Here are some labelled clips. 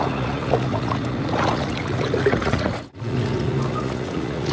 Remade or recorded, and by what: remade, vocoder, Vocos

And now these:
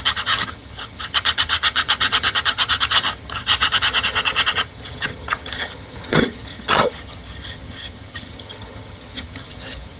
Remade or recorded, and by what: remade, vocoder, HiFi-GAN